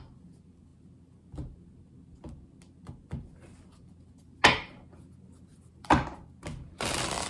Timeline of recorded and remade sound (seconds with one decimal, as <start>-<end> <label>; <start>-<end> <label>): 0.0-5.5 recorded; 5.5-6.3 remade; 6.3-7.3 recorded